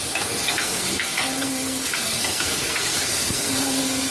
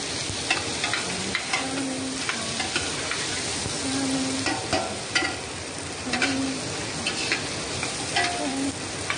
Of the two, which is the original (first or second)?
second